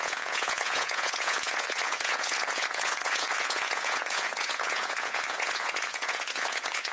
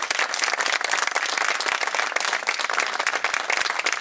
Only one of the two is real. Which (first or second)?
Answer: second